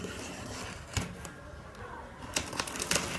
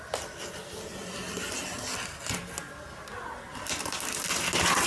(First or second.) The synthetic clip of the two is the first